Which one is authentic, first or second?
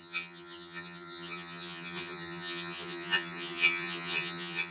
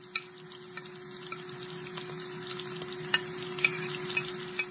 second